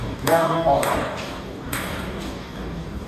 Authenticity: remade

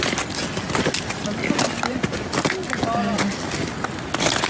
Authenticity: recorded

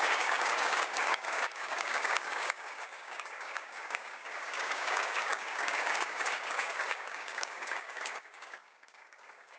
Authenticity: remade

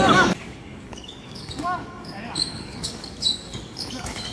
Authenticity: remade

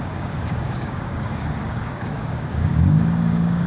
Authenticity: remade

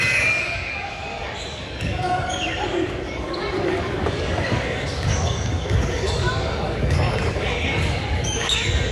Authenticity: remade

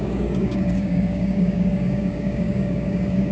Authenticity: remade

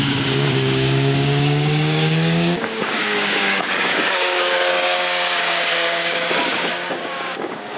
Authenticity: remade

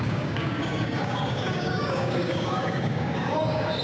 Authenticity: remade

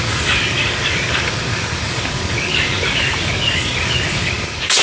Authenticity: remade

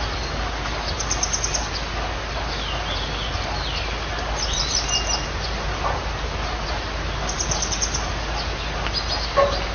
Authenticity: recorded